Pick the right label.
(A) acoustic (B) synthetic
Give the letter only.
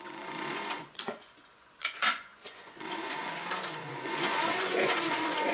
B